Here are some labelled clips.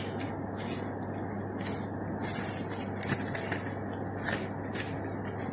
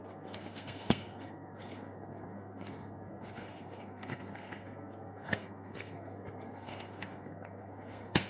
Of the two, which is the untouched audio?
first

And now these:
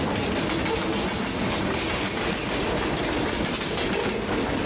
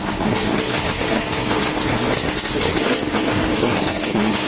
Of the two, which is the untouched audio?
first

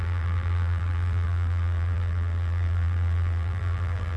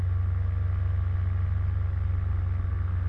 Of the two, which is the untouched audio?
second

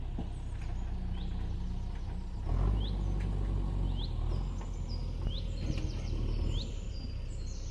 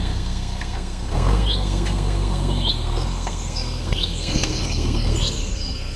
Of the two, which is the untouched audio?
first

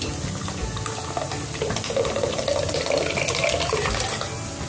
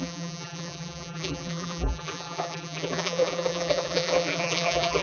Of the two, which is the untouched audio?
first